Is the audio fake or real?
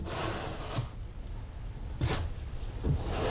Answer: real